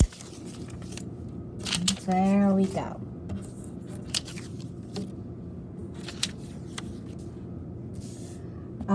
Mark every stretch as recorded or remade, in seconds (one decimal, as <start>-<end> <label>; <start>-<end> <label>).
0.0-4.3 recorded; 4.3-5.1 remade; 5.1-8.9 recorded